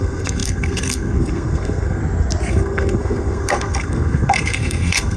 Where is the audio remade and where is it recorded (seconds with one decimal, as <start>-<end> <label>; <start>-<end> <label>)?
0.0-2.0 remade; 2.0-2.5 recorded; 2.5-5.2 remade